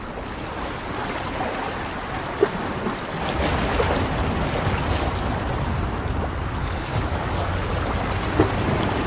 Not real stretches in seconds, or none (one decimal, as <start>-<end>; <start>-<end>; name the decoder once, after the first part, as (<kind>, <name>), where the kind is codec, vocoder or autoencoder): 6.6-7.6 (codec, DAC)